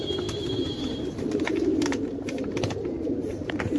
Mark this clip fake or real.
fake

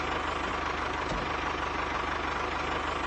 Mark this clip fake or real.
real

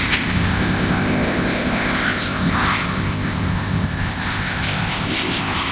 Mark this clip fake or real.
fake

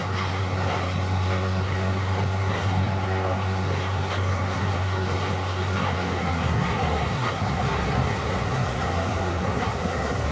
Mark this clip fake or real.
fake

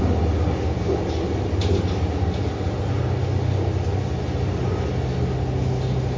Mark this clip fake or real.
real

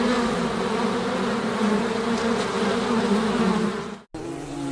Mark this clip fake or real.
real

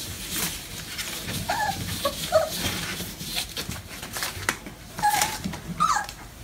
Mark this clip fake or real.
fake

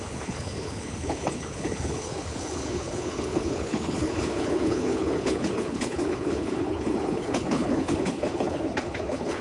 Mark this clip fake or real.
fake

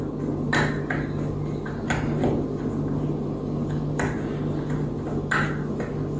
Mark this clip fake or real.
real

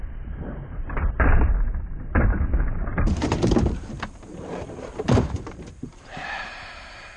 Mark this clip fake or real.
fake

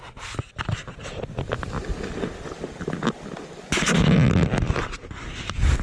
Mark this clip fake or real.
real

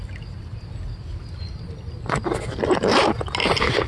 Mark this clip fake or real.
real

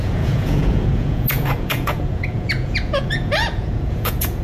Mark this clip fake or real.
fake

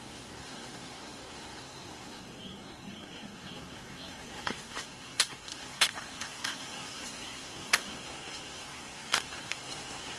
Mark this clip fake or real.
fake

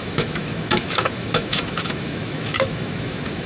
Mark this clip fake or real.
fake